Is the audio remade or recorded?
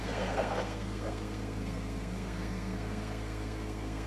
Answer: remade